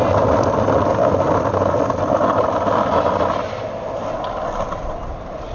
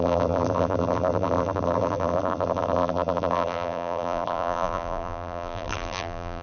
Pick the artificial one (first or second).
second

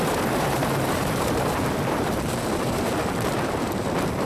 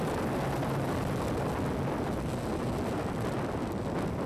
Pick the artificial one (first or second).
first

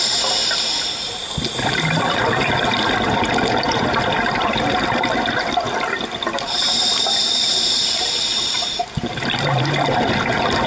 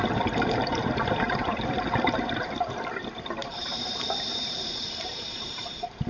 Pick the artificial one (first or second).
second